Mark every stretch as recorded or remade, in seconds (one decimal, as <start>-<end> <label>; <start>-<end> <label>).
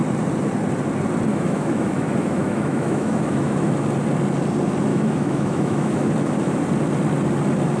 0.0-1.3 recorded; 1.3-3.7 remade; 3.7-4.9 recorded; 4.9-6.1 remade; 6.1-7.8 recorded